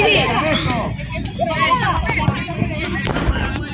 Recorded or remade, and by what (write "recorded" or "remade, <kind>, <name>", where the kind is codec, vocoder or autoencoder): recorded